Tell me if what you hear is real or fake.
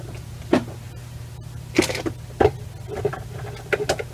real